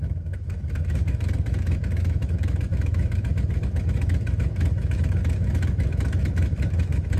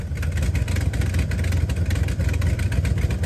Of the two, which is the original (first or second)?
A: second